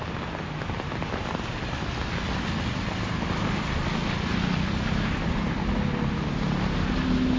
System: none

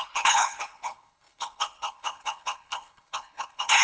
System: codec, HILCodec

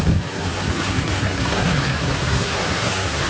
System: codec, SNAC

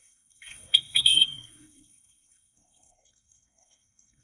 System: codec, SNAC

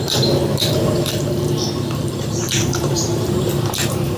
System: vocoder, BigVGAN v2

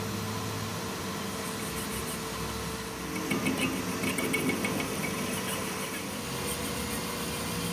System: none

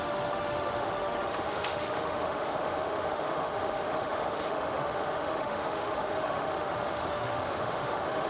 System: autoencoder, DAC-VAE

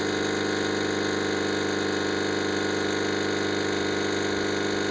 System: none